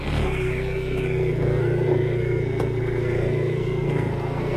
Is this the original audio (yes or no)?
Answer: no